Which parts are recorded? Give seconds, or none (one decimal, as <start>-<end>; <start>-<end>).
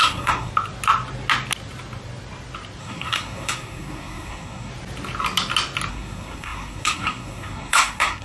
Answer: 0.5-2.8; 4.7-5.9